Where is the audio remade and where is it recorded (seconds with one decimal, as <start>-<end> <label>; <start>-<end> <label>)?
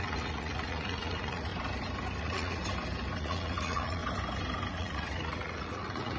0.0-1.5 remade; 1.5-2.2 recorded; 2.2-2.6 remade; 2.6-3.2 recorded; 3.2-4.0 remade; 4.0-4.7 recorded; 4.7-6.2 remade